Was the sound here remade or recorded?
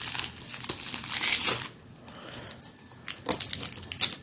recorded